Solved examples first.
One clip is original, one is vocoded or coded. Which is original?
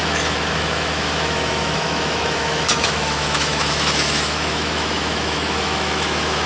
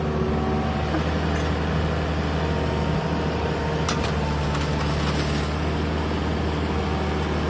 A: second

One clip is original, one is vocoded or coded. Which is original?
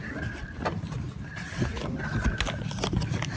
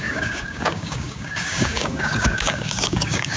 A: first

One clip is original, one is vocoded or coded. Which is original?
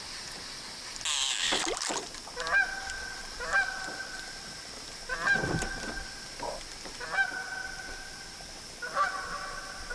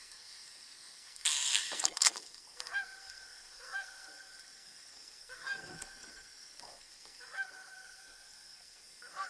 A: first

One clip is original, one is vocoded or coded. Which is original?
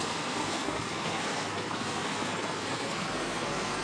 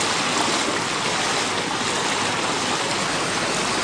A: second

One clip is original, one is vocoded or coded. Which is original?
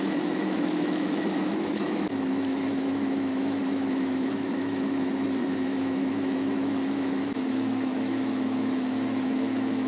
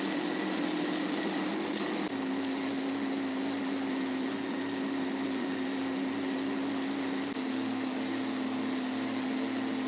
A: second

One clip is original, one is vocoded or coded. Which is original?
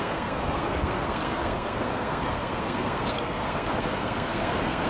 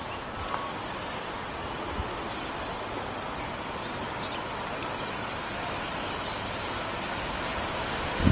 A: second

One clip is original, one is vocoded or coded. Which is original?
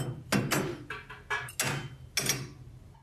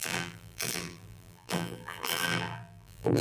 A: first